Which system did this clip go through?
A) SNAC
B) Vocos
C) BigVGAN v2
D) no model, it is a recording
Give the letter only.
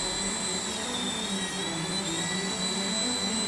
D